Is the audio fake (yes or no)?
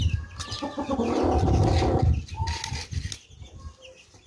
no